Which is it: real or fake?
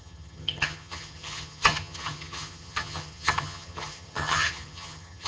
fake